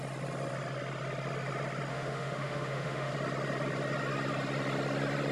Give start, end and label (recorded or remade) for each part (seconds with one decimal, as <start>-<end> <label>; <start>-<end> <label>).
0.0-1.9 recorded; 1.9-3.1 remade; 3.1-5.3 recorded